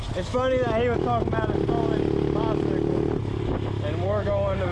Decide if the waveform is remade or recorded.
recorded